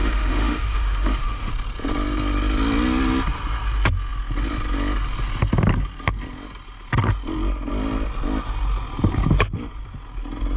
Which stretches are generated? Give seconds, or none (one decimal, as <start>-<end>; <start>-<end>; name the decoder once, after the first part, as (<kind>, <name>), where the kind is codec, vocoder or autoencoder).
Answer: 0.0-1.5 (autoencoder, DAC-VAE)